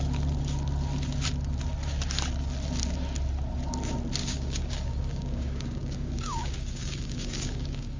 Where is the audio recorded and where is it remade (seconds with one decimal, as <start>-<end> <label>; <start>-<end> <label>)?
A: 0.0-4.2 recorded; 4.2-8.0 remade